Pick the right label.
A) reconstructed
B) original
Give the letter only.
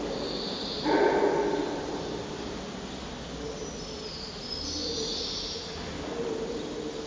B